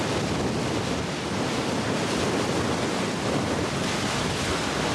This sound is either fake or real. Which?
real